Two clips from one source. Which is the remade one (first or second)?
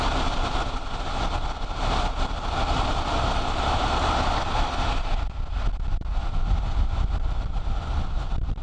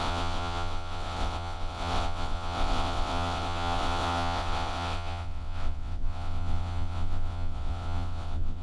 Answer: second